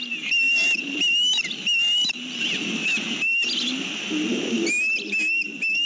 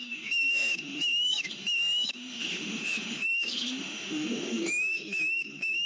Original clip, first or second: first